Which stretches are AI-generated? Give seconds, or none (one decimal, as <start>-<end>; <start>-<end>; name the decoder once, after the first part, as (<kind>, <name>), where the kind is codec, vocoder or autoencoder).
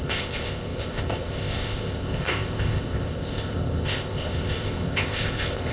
0.0-5.7 (codec, ZipCodec)